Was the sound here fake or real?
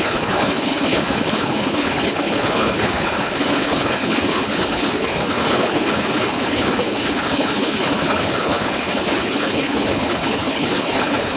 fake